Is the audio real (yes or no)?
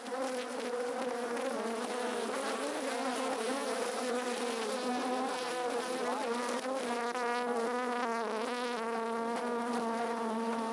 yes